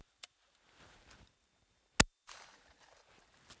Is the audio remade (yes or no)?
no